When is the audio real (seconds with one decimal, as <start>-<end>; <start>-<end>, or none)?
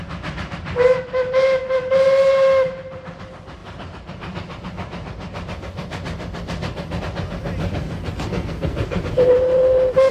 0.0-7.8; 9.0-10.1